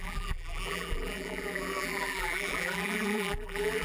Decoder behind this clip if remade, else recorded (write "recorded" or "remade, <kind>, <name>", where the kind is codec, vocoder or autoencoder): remade, vocoder, BigVGAN v2